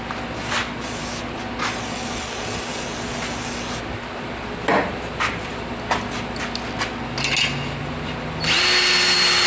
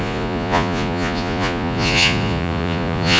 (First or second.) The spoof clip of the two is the second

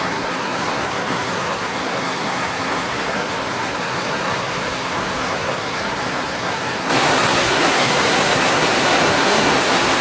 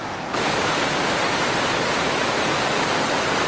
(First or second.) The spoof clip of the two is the first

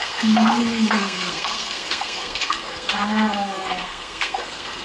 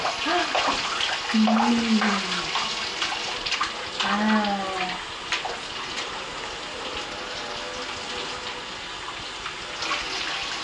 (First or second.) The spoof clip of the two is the first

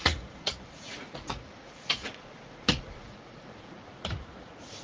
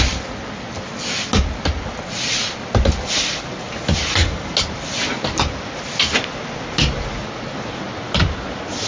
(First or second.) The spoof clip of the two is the first